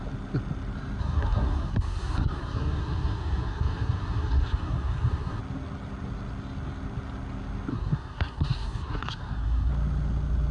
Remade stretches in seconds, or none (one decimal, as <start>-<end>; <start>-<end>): 1.0-5.4; 7.7-9.7